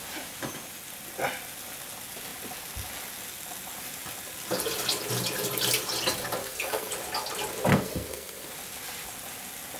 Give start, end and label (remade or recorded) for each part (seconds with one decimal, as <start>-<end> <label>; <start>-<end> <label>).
0.0-6.4 recorded; 6.4-6.9 remade; 6.9-7.7 recorded; 7.7-8.5 remade; 8.5-9.8 recorded